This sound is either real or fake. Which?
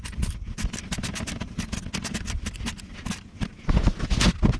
real